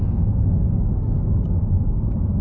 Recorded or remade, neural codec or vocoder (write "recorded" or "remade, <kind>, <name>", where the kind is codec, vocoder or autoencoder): remade, codec, DAC